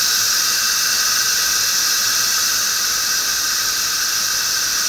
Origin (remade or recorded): recorded